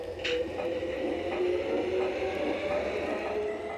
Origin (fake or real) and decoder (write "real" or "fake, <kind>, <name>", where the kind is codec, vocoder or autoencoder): real